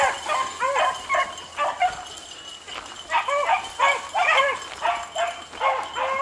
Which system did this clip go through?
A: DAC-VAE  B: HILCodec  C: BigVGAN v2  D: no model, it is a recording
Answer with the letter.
D